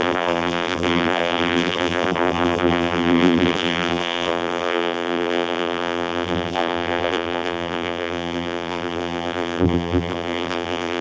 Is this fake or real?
fake